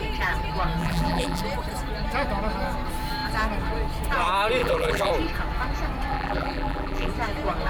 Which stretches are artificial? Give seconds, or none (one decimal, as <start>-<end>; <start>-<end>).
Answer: 0.8-1.4; 4.6-5.1; 6.1-7.1